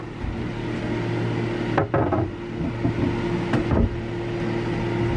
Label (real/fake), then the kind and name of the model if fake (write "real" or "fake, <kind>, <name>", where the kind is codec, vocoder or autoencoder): real